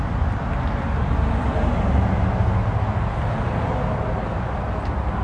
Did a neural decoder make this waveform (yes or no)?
no